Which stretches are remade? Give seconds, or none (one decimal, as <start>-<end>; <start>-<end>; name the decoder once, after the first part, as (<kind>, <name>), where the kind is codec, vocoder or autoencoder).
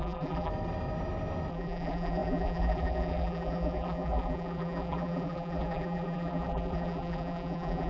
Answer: 0.0-0.5 (vocoder, BigVGAN v2); 1.5-7.9